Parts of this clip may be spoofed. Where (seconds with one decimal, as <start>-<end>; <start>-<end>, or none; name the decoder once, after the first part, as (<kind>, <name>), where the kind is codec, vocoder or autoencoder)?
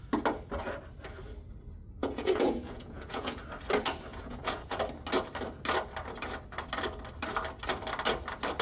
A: 2.0-3.4 (vocoder, Vocos); 4.1-4.8